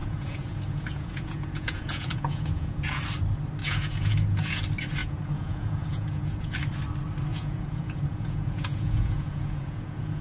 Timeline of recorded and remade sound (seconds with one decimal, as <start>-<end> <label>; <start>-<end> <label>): 0.0-3.0 remade; 3.0-3.6 recorded; 3.6-4.6 remade; 4.6-5.0 recorded; 5.0-6.5 remade; 6.5-7.3 recorded; 7.3-10.2 remade